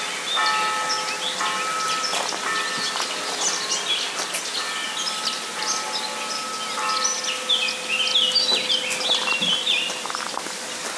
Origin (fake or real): real